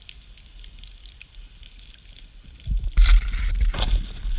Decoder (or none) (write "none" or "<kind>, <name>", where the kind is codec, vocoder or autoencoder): none